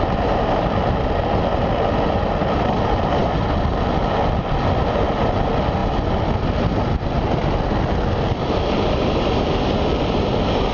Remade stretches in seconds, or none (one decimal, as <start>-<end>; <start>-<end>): none